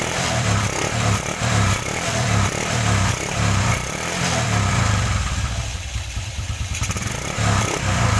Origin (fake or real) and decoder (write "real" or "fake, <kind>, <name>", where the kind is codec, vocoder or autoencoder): fake, vocoder, BigVGAN v2